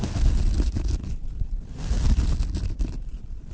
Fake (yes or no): no